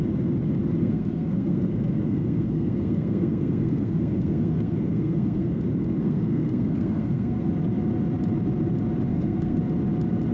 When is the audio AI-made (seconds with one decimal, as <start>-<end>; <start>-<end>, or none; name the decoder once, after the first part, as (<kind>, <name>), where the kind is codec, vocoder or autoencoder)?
0.8-5.6 (codec, SNAC); 6.0-7.5; 9.1-9.6